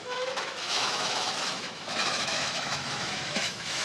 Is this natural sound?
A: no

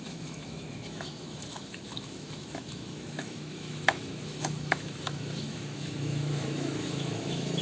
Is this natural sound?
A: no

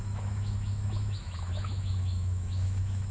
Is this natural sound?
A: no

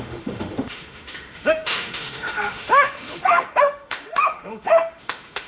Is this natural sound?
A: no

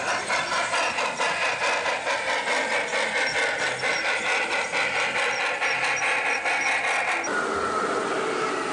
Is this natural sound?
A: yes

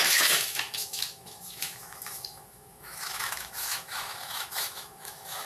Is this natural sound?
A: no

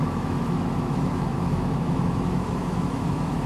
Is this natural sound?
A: no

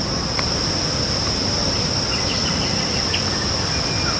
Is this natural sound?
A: yes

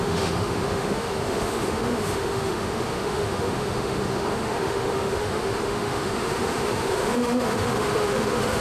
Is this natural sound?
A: no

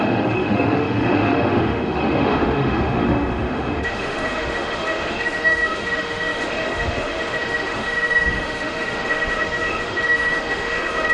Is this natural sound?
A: no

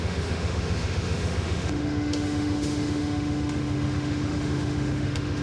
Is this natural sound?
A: no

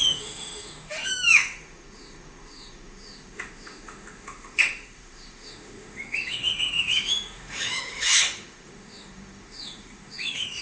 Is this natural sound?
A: no